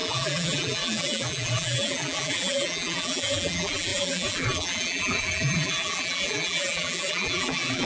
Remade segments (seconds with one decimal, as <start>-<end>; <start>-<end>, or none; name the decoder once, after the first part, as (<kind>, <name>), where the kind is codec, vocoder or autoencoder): 0.0-7.8 (vocoder, BigVGAN v2)